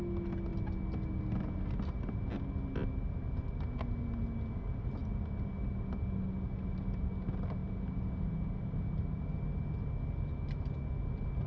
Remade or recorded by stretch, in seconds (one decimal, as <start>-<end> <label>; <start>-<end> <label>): 0.0-11.5 recorded